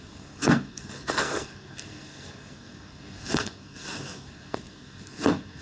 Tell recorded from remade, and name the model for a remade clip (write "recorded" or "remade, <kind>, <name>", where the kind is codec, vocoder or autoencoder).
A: remade, codec, SNAC